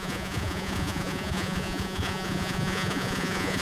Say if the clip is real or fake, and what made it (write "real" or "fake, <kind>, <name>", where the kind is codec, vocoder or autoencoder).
fake, vocoder, Vocos